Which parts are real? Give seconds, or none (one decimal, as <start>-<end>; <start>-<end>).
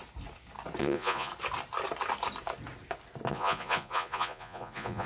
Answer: 0.0-0.8; 1.3-3.3